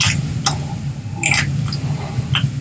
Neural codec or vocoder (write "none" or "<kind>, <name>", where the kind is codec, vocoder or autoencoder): none